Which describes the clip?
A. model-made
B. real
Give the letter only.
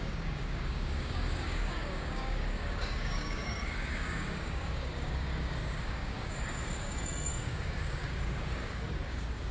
A